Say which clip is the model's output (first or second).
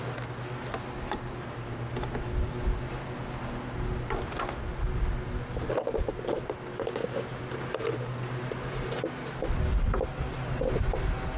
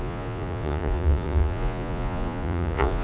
second